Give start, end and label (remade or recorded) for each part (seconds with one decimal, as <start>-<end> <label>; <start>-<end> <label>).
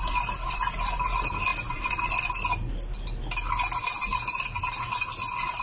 0.0-5.6 recorded